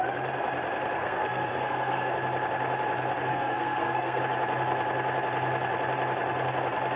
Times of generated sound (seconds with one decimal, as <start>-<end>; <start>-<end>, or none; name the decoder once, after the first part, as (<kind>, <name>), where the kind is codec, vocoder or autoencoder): 1.0-2.1 (codec, SNAC); 3.3-4.2